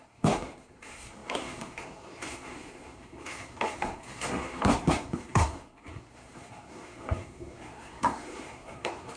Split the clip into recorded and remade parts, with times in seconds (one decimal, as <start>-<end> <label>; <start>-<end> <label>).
0.0-9.2 remade

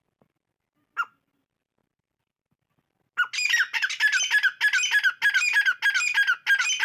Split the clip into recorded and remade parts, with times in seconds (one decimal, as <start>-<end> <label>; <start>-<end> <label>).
0.0-6.8 recorded